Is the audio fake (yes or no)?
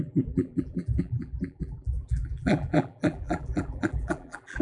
yes